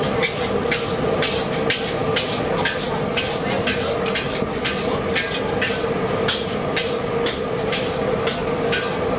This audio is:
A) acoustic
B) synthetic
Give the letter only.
A